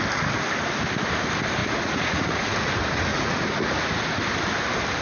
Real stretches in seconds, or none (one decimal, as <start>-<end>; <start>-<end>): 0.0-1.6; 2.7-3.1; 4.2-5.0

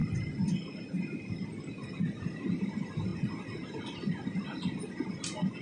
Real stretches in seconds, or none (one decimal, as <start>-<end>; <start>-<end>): 0.0-5.6

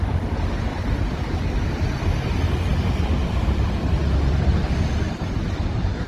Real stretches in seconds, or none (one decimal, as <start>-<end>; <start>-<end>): 0.0-0.7; 1.4-6.1

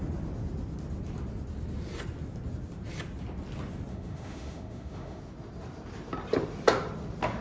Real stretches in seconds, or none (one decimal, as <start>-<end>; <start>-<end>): 0.0-3.9; 5.2-7.4